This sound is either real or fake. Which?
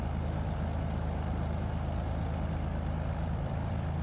real